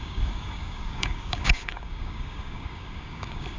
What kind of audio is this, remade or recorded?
remade